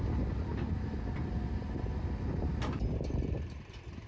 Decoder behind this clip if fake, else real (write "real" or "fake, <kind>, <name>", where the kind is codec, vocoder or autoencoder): real